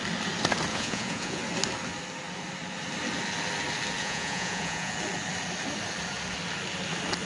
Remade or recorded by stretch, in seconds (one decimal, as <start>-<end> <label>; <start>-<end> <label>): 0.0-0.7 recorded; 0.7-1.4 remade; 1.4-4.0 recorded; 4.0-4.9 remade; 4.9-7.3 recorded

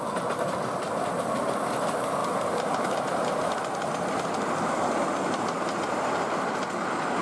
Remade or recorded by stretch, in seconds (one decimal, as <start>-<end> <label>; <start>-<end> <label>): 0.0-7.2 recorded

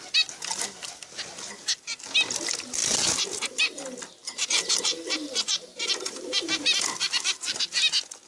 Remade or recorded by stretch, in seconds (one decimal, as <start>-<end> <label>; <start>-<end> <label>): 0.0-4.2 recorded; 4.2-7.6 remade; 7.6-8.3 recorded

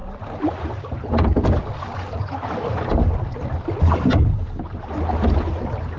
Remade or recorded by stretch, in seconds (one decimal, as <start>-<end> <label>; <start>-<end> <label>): 0.0-6.0 recorded

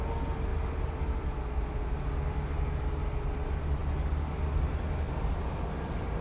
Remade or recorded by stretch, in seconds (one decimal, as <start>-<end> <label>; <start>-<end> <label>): 0.0-6.2 recorded

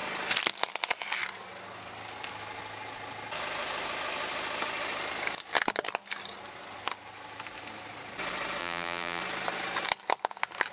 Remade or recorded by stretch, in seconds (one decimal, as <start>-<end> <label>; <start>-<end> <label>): 0.0-8.6 recorded; 8.6-9.2 remade; 9.2-10.7 recorded

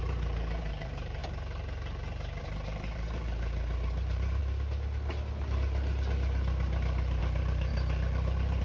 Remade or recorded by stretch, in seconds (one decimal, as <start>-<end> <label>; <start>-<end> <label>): 0.0-1.2 remade; 1.2-2.4 recorded; 2.4-4.4 remade; 4.4-7.2 recorded; 7.2-8.6 remade